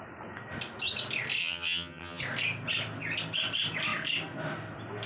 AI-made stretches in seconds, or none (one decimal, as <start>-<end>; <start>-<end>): 1.4-2.2